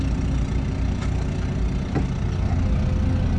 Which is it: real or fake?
real